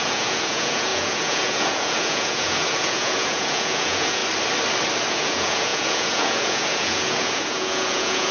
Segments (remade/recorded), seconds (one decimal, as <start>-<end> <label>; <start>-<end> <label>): 0.0-4.2 remade; 4.2-5.1 recorded; 5.1-8.3 remade